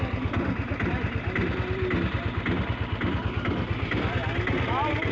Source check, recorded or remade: recorded